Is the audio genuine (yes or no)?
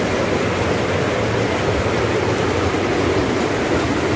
yes